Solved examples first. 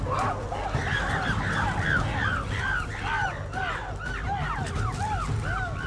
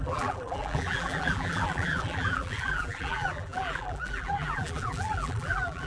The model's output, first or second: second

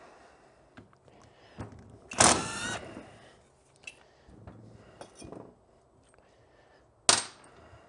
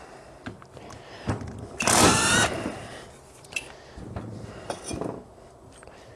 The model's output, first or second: second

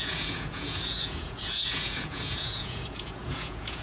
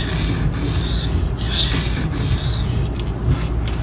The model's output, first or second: first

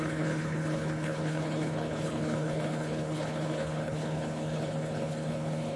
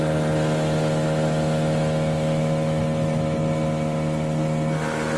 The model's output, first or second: first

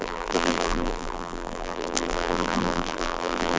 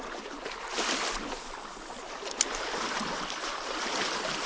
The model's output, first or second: first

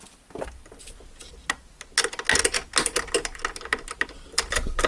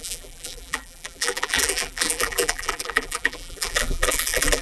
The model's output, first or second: second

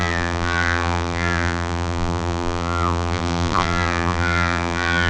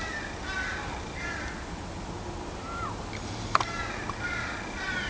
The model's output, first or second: first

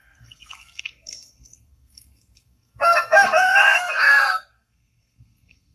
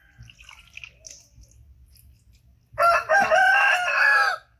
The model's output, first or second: first